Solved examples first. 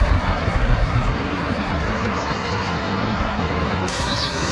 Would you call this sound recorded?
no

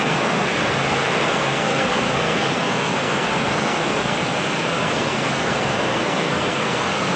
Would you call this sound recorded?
no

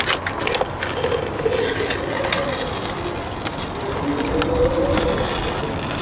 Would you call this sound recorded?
yes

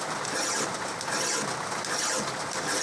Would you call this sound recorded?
yes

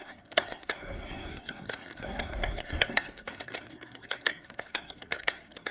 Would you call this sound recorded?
no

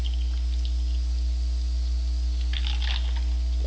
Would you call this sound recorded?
yes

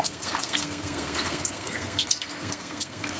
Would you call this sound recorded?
no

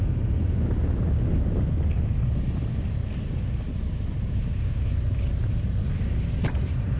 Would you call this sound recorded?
yes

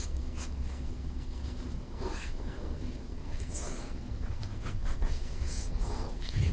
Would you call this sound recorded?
no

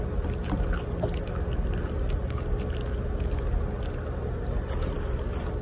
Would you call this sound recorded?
yes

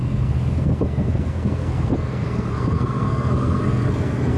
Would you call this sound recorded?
no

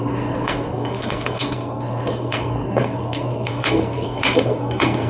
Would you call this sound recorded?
no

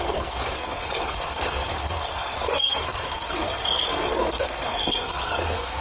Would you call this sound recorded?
no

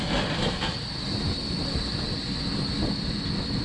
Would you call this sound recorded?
yes